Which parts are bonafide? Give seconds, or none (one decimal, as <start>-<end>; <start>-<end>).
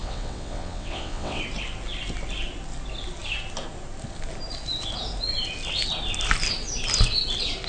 1.4-7.7